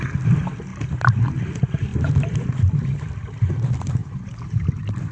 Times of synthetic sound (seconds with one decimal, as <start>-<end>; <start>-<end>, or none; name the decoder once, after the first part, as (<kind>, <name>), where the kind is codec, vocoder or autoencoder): 4.0-5.1 (vocoder, BigVGAN v2)